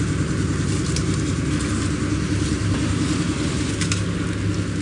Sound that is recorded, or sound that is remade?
recorded